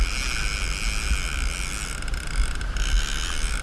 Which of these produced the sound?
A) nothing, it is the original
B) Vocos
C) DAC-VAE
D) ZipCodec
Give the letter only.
A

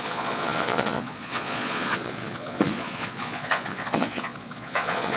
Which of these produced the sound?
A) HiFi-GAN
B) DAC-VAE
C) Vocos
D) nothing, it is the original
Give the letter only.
C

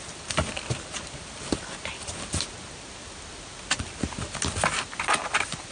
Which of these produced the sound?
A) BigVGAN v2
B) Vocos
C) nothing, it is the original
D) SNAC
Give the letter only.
C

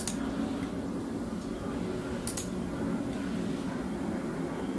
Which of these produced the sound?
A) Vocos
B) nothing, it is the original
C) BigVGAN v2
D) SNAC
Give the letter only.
B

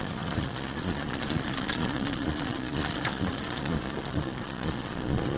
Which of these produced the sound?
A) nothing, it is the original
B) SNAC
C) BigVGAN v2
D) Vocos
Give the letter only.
D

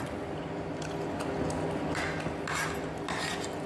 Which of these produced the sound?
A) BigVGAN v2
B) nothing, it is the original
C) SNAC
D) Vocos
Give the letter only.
B